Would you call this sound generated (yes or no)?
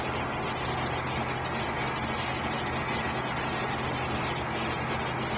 no